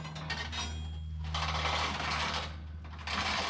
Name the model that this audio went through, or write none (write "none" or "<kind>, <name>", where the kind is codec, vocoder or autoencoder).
none